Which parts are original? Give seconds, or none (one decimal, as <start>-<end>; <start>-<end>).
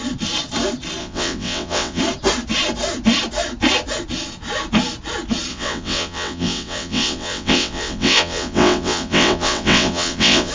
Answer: 0.0-1.0; 2.0-5.5